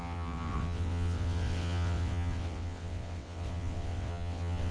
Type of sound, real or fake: fake